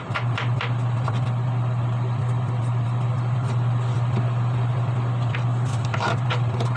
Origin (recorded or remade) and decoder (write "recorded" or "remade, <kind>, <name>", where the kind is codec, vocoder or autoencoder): recorded